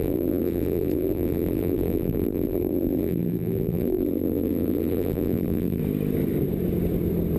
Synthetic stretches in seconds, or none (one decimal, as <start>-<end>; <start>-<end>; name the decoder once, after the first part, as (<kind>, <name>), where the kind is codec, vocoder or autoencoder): 0.0-5.8 (vocoder, BigVGAN v2)